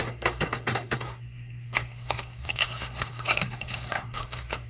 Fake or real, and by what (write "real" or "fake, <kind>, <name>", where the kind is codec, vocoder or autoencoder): fake, codec, SNAC